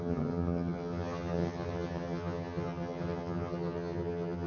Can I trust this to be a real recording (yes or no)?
no